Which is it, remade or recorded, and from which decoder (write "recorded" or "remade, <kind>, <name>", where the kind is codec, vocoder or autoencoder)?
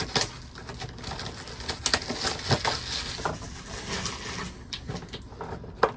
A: recorded